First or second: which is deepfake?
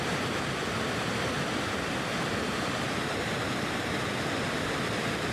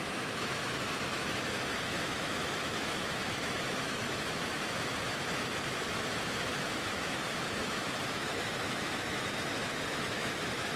second